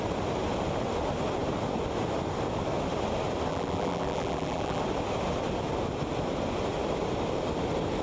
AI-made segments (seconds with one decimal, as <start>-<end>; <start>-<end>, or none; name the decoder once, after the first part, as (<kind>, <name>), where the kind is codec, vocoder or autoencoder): 3.5-4.8 (vocoder, BigVGAN v2)